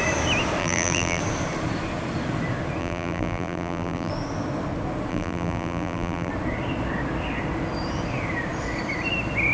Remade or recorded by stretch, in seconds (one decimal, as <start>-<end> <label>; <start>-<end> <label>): 0.0-0.6 recorded; 0.6-1.2 remade; 1.2-2.8 recorded; 2.8-4.1 remade; 4.1-5.1 recorded; 5.1-6.3 remade; 6.3-9.5 recorded